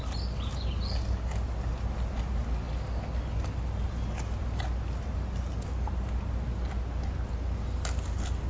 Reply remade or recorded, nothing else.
recorded